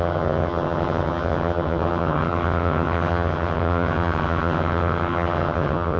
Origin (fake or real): fake